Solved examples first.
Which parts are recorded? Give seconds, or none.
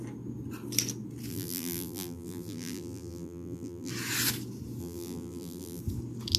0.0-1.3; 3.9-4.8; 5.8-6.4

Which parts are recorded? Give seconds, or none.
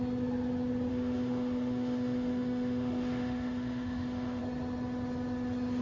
0.0-0.9; 4.4-5.8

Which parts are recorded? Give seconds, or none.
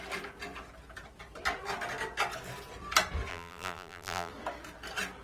0.0-3.3; 4.3-5.2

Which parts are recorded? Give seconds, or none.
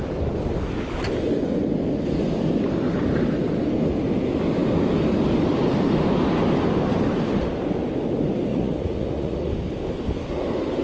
0.0-8.5; 9.5-10.8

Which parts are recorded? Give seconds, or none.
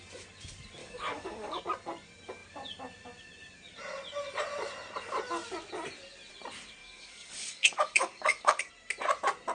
0.0-0.8; 1.6-6.8; 8.7-9.5